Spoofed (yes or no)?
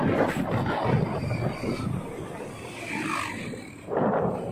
no